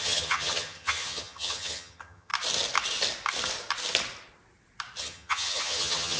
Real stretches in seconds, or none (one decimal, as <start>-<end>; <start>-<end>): 2.3-5.0